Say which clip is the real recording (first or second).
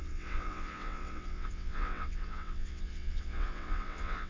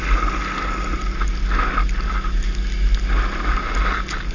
second